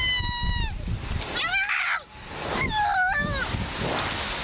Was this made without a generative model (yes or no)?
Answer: yes